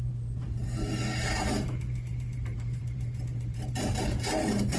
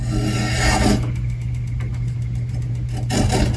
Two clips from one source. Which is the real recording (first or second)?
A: second